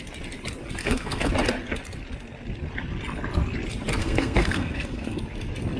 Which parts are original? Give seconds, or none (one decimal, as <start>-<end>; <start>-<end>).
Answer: 0.0-0.8; 1.3-4.0; 5.2-5.8